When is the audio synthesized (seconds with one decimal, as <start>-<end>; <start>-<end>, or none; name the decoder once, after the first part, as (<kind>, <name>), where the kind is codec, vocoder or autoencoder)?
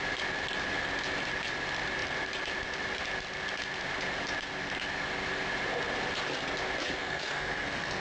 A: 7.0-8.0 (codec, SNAC)